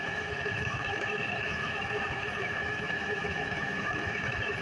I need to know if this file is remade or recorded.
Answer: remade